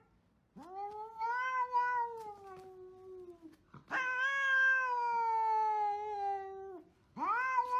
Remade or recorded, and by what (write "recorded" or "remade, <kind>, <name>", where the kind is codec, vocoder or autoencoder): recorded